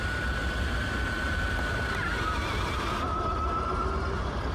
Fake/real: real